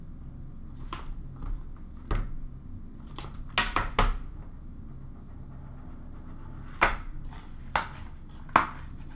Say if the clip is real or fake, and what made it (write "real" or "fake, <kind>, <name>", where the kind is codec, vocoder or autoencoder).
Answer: real